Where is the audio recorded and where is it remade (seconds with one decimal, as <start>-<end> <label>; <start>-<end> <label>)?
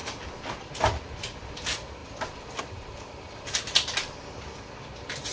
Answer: 0.0-5.3 recorded